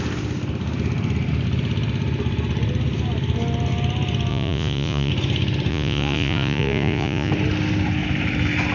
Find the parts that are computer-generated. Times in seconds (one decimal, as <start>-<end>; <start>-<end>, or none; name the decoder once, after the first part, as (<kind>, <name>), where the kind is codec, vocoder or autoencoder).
4.3-5.1 (vocoder, Vocos); 5.7-7.3